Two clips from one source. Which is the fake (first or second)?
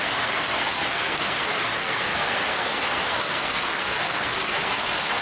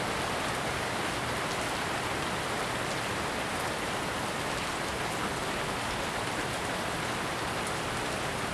first